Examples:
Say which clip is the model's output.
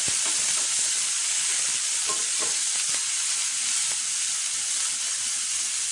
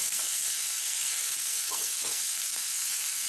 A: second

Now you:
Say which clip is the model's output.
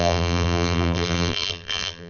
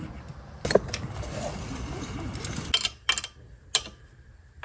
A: first